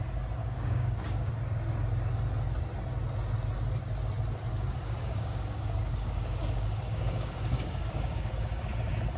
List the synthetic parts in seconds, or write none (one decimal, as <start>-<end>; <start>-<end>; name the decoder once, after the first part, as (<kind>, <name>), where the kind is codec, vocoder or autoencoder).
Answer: 0.4-1.3 (codec, DAC); 4.5-8.3